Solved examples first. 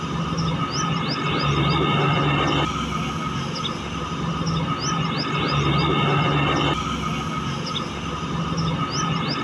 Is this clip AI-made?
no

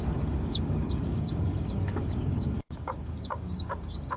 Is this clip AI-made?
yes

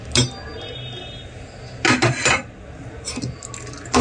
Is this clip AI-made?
no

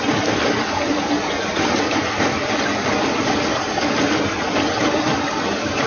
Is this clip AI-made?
no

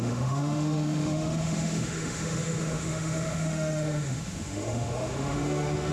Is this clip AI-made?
yes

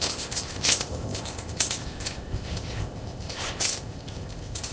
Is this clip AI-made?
yes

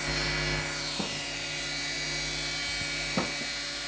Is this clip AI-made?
no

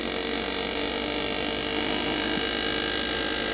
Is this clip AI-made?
no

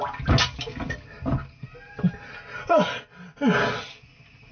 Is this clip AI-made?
no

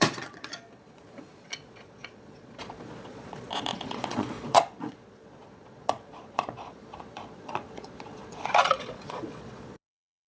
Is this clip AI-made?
yes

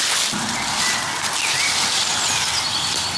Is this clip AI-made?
no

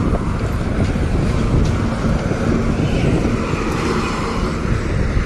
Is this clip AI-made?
no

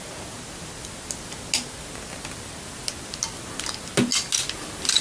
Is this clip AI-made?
no